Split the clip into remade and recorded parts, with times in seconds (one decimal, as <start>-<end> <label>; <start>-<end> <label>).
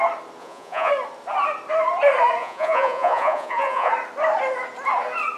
0.0-0.4 recorded; 0.4-0.9 remade; 0.9-2.4 recorded; 2.4-3.9 remade; 3.9-5.4 recorded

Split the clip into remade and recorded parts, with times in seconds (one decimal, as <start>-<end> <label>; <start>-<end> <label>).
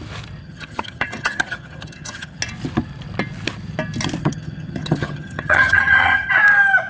0.0-0.4 recorded; 0.4-2.4 remade; 2.4-4.2 recorded; 4.2-6.3 remade; 6.3-6.9 recorded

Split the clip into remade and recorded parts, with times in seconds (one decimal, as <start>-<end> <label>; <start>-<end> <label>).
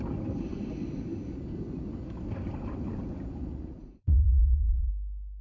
0.0-3.4 recorded; 3.4-4.9 remade; 4.9-5.4 recorded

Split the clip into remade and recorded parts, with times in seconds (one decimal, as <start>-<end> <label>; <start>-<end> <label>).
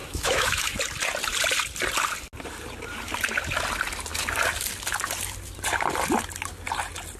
0.0-0.8 remade; 0.8-7.2 recorded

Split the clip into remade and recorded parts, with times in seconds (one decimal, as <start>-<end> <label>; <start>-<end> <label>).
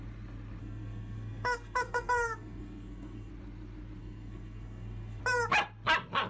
0.0-0.6 recorded; 0.6-3.3 remade; 3.3-4.0 recorded; 4.0-5.2 remade; 5.2-6.3 recorded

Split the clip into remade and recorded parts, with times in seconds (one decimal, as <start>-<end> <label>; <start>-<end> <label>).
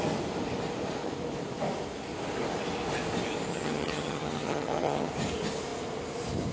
0.0-3.5 recorded; 3.5-5.1 remade; 5.1-6.5 recorded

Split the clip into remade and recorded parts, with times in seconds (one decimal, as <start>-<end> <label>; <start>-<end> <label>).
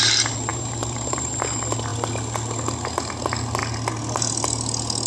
0.0-0.5 recorded; 0.5-1.3 remade; 1.3-5.1 recorded